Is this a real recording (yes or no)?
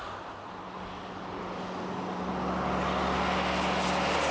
yes